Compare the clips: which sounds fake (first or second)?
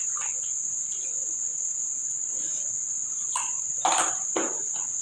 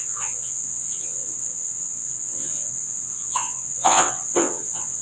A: second